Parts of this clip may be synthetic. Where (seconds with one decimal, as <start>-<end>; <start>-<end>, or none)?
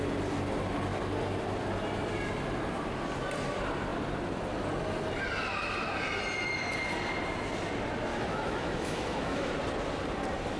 8.1-9.5